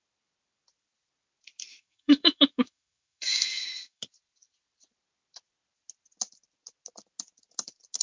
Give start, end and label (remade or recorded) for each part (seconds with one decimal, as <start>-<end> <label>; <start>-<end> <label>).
0.0-1.7 recorded; 1.7-4.0 remade; 4.0-8.0 recorded